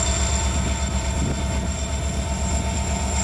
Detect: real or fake real